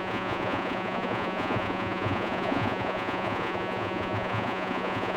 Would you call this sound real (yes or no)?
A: no